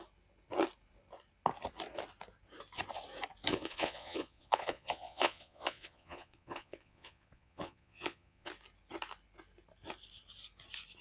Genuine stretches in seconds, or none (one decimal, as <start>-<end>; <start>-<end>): 0.0-3.5; 8.5-11.0